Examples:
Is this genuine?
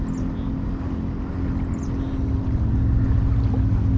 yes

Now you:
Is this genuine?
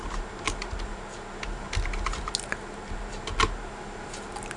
yes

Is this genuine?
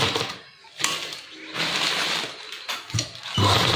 yes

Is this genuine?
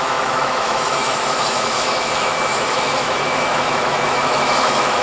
no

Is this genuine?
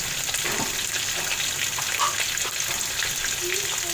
yes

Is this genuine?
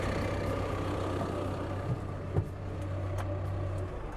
yes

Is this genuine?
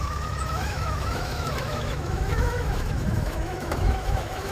no